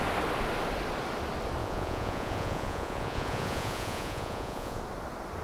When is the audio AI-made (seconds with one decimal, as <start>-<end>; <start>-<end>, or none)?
1.6-4.8